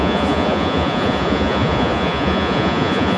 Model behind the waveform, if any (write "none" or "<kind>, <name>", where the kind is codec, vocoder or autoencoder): vocoder, Vocos